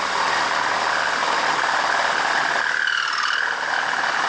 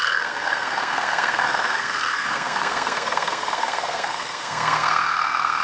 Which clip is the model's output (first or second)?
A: second